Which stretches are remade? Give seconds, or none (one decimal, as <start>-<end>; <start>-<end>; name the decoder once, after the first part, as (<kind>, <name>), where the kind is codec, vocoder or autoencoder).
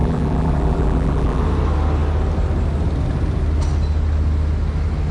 0.0-1.4 (vocoder, BigVGAN v2)